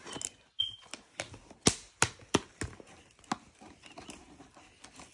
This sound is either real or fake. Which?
real